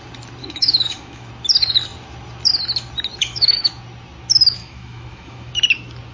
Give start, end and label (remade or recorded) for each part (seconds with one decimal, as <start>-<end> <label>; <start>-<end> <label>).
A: 0.0-0.4 recorded; 0.4-1.3 remade; 1.3-3.2 recorded; 3.2-3.7 remade; 3.7-4.6 recorded; 4.6-5.5 remade; 5.5-6.1 recorded